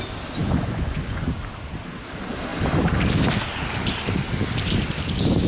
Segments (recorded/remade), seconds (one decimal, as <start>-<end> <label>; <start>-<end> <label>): 0.0-0.4 recorded; 0.4-1.3 remade; 1.3-5.5 recorded